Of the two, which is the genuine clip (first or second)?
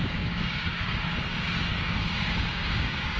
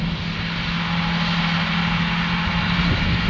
second